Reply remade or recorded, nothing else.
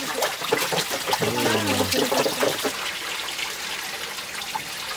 recorded